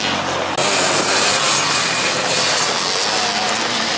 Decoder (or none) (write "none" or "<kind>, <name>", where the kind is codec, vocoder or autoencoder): none